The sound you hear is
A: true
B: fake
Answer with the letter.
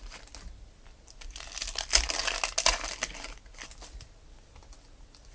A